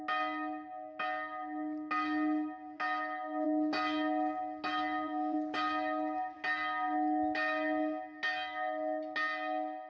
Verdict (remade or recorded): recorded